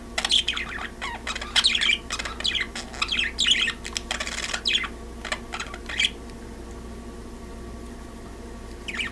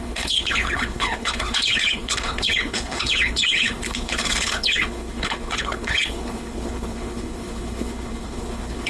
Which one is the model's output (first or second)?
second